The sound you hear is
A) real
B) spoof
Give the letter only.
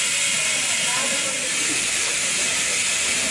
A